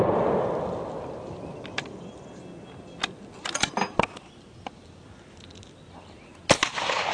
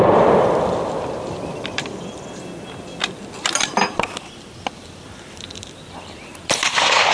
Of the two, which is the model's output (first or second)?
second